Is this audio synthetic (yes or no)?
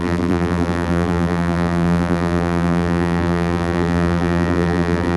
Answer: yes